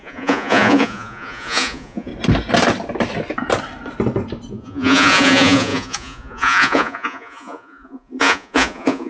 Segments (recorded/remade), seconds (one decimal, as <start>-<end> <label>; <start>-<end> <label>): 0.0-2.1 remade; 2.1-4.5 recorded; 4.5-9.1 remade

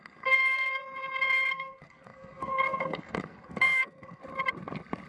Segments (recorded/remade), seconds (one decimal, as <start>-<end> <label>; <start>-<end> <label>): 0.0-0.8 remade; 0.8-1.5 recorded; 1.5-4.2 remade; 4.2-5.1 recorded

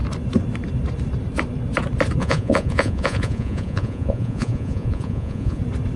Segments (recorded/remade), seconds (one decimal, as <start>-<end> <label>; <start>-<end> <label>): 0.0-2.2 recorded; 2.2-5.6 remade; 5.6-6.0 recorded